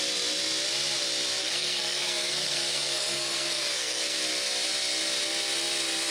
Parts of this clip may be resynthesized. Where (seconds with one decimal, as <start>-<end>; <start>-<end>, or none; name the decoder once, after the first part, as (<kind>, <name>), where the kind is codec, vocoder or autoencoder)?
1.4-4.2 (codec, SNAC)